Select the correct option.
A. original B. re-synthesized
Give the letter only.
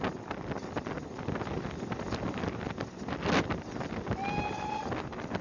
A